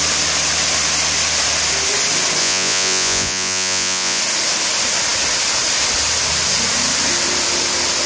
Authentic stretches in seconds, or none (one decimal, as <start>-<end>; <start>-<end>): 0.0-2.4; 4.2-8.1